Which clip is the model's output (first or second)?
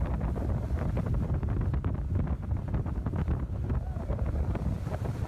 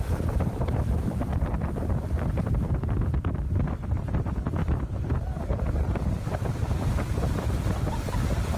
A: second